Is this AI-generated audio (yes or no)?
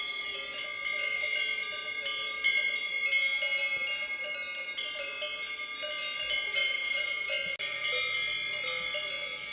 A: no